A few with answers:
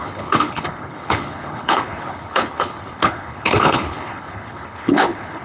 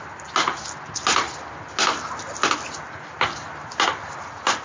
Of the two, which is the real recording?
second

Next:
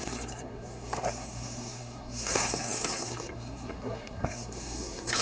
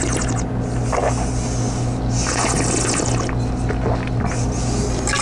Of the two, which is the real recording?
second